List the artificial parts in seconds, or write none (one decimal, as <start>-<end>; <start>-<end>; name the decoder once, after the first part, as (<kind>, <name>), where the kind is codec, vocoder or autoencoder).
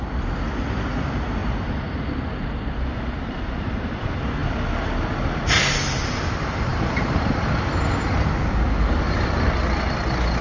1.4-4.0 (vocoder, BigVGAN v2); 6.7-7.2